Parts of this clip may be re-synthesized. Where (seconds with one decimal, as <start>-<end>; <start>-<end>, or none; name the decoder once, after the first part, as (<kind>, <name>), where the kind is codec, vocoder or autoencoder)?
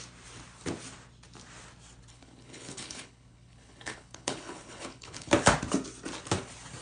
2.1-5.3 (codec, HILCodec)